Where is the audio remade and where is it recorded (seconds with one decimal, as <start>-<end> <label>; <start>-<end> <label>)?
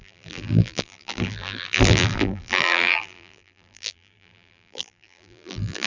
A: 0.0-5.9 remade